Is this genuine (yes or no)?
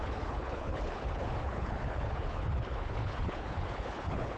no